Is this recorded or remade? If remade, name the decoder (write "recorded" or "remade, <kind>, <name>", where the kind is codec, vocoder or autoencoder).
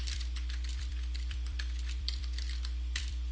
remade, vocoder, BigVGAN v2